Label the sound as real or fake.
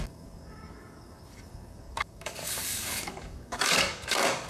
fake